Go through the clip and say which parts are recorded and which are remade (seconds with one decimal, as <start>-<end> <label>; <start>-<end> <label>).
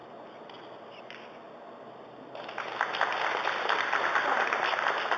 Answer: 0.0-5.2 recorded